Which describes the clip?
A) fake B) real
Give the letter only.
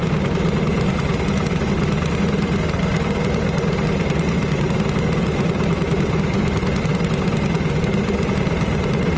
B